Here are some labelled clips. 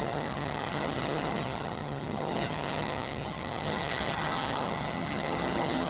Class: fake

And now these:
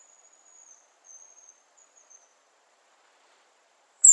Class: fake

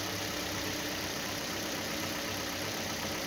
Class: fake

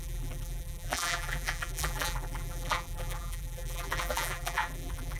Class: fake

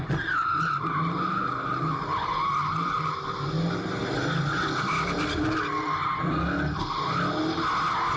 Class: real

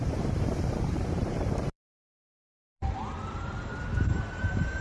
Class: fake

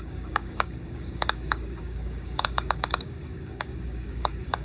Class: fake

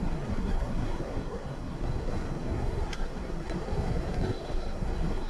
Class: fake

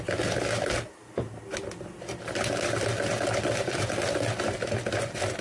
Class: real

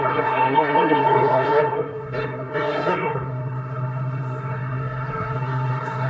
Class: fake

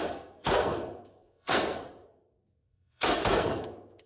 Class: fake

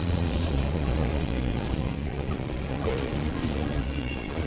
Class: fake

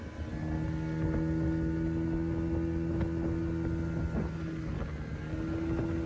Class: real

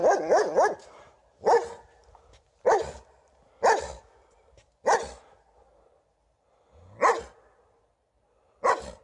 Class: real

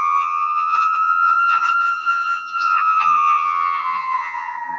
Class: fake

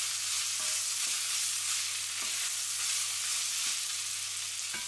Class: real